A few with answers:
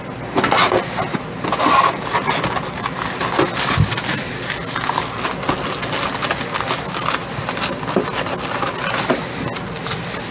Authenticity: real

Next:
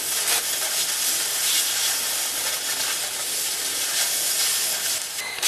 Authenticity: real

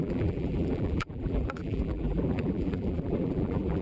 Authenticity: fake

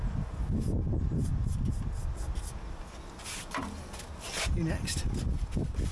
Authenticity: real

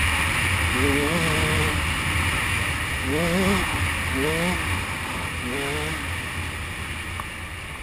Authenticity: real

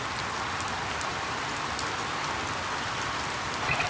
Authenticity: real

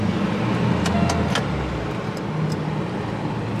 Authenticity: real